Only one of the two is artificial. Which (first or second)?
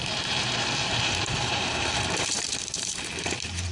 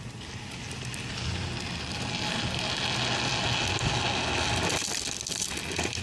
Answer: first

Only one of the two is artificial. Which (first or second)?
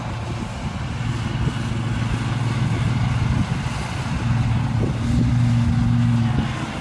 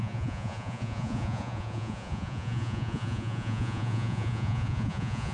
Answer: second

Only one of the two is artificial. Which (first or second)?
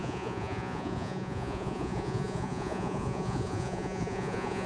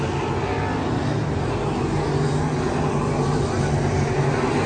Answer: first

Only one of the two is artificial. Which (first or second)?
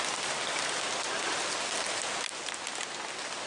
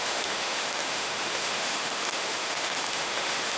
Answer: second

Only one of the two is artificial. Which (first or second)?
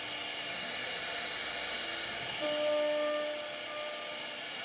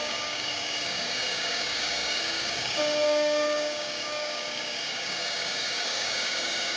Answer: second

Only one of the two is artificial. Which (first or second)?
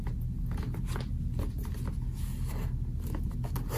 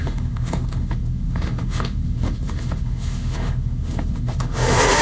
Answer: second